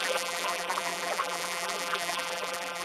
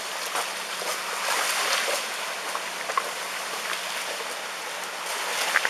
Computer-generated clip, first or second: first